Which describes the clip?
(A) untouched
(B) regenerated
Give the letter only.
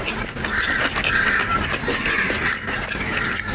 A